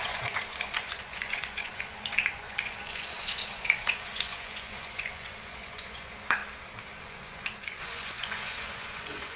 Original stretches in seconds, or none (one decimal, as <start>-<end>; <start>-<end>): 6.4-7.0